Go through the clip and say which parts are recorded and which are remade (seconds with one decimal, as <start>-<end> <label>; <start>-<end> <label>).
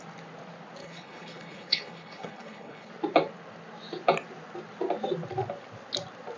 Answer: 0.0-0.8 recorded; 0.8-2.9 remade; 2.9-6.4 recorded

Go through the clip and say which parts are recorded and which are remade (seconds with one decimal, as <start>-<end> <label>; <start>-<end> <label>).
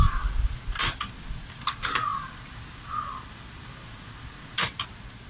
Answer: 0.0-5.3 recorded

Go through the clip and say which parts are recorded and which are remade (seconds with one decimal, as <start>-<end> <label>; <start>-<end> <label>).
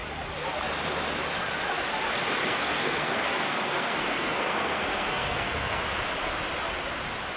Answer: 0.0-2.4 recorded; 2.4-5.8 remade; 5.8-7.4 recorded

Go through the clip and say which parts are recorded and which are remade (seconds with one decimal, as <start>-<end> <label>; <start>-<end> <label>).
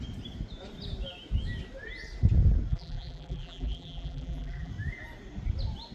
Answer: 0.0-2.7 recorded; 2.7-4.7 remade; 4.7-5.9 recorded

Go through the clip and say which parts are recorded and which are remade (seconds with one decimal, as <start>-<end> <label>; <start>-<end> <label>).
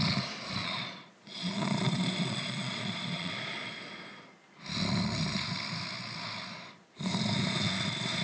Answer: 0.0-0.6 recorded; 0.6-3.3 remade; 3.3-8.2 recorded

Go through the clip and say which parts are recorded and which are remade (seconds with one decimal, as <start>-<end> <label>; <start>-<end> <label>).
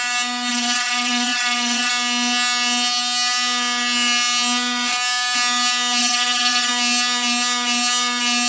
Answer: 0.0-0.5 recorded; 0.5-1.9 remade; 1.9-6.0 recorded; 6.0-6.7 remade; 6.7-8.5 recorded